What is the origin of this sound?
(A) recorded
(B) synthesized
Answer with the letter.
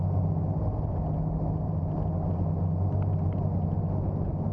A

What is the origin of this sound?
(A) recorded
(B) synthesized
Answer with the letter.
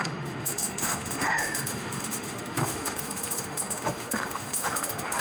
B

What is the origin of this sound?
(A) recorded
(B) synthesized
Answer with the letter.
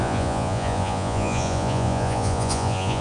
B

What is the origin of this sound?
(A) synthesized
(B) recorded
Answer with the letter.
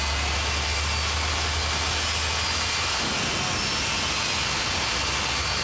B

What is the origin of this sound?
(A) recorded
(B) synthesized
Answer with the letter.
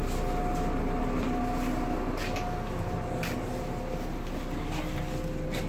A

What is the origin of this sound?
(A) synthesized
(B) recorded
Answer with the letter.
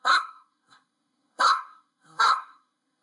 A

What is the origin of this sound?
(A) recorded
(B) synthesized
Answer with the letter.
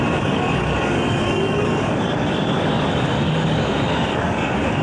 B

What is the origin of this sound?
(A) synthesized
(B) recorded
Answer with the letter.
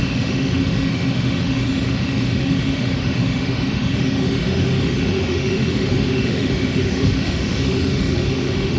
A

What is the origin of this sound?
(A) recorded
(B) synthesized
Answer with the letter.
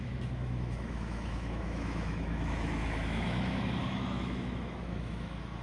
B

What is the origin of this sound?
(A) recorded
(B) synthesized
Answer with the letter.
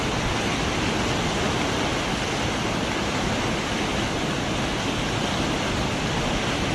A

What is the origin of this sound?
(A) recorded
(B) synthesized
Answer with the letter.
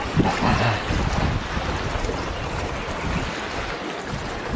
A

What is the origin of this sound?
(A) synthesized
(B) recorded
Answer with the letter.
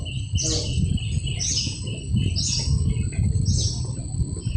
B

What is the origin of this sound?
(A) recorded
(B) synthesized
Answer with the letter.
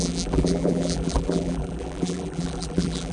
B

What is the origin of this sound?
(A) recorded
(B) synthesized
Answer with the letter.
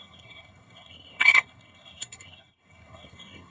B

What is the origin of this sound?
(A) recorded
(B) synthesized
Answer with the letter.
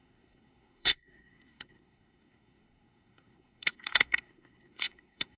B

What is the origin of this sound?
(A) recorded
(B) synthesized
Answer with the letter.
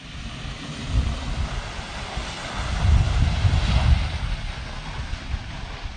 A